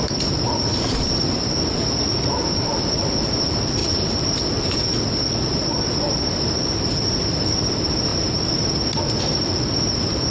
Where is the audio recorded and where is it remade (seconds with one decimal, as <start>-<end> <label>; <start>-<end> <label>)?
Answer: 0.0-10.3 recorded